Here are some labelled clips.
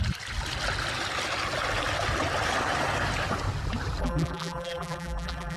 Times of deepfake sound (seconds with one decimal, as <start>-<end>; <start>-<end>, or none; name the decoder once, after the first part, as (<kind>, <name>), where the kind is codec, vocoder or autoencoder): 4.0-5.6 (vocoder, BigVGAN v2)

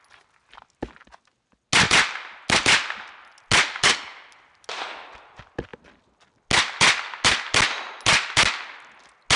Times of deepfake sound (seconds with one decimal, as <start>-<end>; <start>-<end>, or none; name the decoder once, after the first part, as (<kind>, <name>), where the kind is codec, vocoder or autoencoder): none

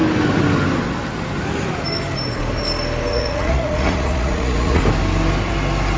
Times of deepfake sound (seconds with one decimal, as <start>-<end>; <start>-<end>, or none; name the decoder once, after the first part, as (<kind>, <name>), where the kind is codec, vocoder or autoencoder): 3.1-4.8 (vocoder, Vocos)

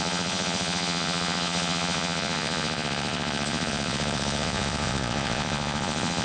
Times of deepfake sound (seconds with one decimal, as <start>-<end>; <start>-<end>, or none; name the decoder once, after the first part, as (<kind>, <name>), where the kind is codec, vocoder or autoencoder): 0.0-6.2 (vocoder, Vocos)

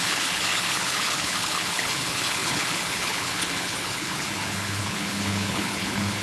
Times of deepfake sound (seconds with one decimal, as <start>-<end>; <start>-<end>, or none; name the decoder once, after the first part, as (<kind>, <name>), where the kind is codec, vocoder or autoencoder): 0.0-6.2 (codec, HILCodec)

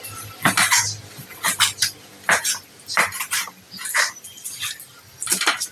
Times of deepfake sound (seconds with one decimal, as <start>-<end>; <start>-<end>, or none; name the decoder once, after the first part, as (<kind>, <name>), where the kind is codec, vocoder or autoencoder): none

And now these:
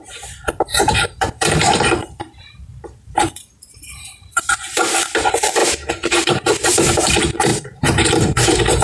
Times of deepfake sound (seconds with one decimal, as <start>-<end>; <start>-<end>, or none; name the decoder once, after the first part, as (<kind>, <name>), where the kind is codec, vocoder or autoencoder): 0.0-8.8 (vocoder, BigVGAN v2)